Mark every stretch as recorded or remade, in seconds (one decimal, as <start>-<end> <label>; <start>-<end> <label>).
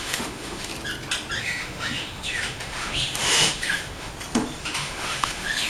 0.0-0.7 remade; 0.7-1.4 recorded; 1.4-4.1 remade; 4.1-4.6 recorded; 4.6-5.7 remade